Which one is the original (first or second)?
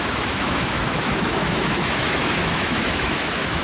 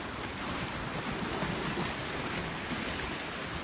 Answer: second